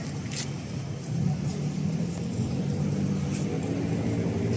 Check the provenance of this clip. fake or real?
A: real